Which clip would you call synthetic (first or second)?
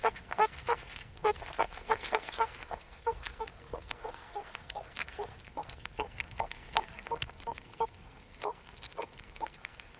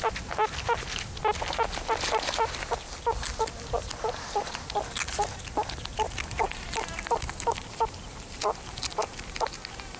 first